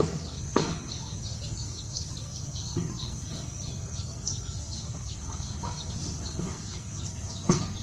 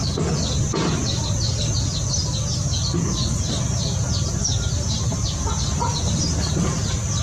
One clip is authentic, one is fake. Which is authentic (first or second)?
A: second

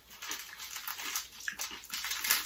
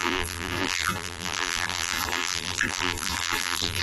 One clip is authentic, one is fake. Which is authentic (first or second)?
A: first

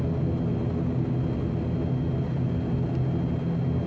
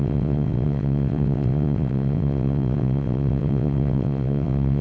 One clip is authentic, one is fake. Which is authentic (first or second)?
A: first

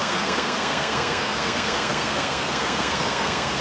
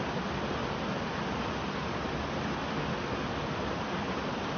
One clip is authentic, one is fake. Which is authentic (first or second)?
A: second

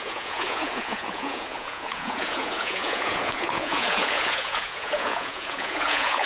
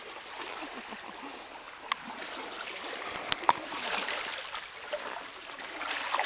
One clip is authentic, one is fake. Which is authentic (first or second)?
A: second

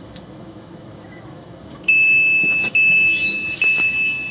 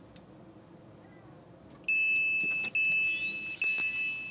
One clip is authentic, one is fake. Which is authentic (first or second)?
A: second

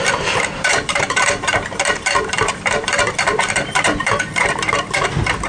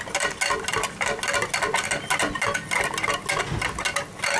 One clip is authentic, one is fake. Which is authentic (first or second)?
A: second